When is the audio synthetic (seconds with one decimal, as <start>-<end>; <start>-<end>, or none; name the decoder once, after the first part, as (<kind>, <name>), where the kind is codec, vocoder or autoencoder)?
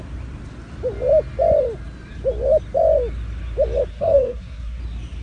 3.9-4.8 (codec, SNAC)